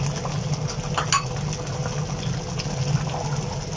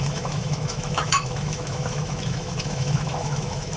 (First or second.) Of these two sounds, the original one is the first